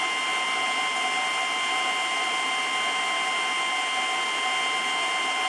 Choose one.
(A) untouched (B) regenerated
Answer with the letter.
A